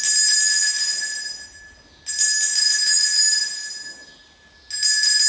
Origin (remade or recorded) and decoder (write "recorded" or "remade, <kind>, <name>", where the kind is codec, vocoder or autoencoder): recorded